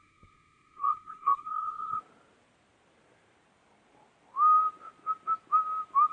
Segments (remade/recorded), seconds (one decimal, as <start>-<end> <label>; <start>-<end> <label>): 0.0-2.0 remade; 2.0-6.1 recorded